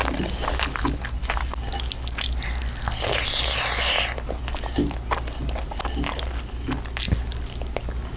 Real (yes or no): yes